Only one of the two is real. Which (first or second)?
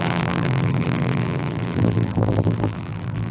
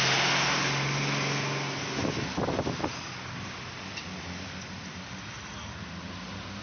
second